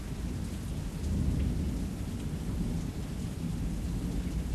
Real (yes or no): yes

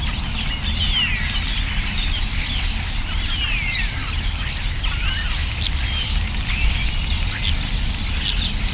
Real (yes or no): yes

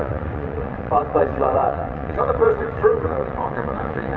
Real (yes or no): no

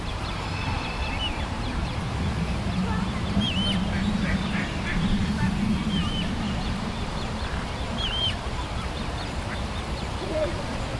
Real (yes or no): no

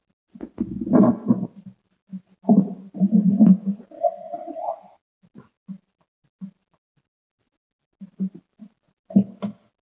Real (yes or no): yes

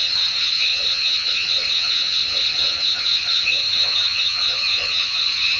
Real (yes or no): no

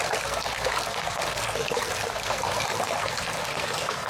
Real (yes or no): no